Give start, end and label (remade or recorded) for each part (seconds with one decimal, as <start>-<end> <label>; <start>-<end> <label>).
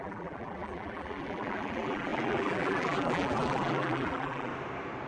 0.0-4.5 remade; 4.5-5.1 recorded